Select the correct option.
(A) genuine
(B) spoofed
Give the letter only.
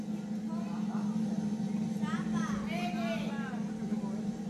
A